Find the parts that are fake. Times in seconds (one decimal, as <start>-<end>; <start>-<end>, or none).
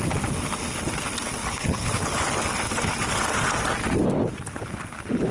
1.4-2.2; 4.6-5.3